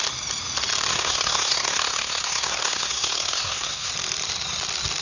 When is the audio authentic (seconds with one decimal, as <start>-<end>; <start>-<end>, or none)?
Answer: 0.0-0.9; 3.9-5.0